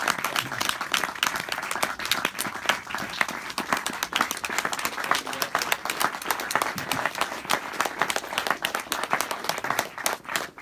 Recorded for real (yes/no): yes